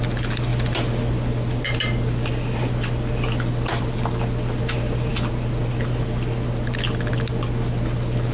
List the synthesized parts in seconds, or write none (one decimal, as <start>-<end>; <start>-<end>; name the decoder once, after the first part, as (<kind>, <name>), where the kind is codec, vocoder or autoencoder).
none